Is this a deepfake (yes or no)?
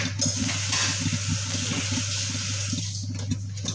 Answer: no